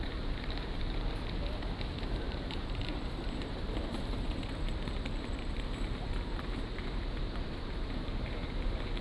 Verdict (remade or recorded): remade